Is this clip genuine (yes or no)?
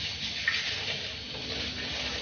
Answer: yes